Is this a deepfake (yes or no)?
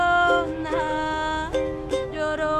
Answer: yes